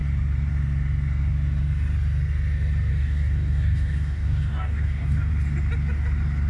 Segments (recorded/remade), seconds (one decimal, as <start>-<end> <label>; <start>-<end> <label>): 0.0-2.9 recorded; 2.9-5.3 remade; 5.3-6.5 recorded

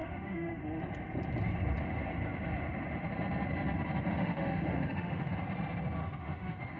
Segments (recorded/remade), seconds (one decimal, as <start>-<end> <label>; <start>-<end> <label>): 0.0-0.6 remade; 0.6-4.1 recorded; 4.1-5.3 remade; 5.3-6.0 recorded; 6.0-6.8 remade

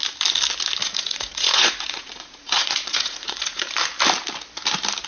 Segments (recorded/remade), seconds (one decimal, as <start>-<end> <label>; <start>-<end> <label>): 0.0-0.8 recorded; 0.8-3.7 remade; 3.7-5.1 recorded